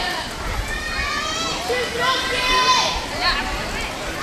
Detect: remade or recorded recorded